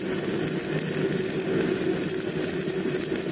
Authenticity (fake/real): real